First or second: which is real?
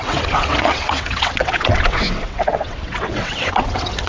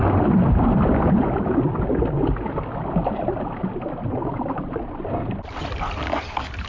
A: second